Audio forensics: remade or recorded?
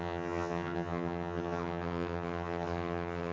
remade